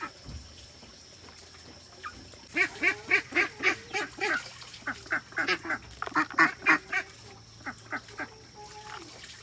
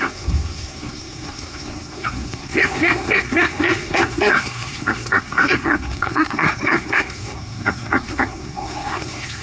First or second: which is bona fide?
first